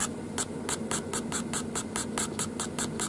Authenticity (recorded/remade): recorded